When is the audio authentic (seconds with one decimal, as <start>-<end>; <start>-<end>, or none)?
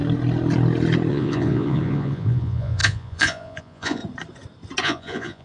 0.0-1.1; 4.0-4.8